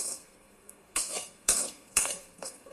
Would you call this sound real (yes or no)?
no